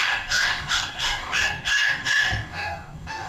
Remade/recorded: remade